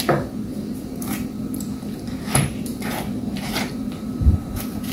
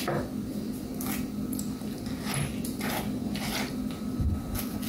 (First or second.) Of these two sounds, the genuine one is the second